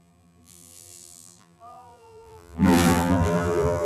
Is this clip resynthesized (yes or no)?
yes